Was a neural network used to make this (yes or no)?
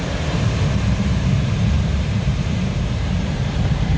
yes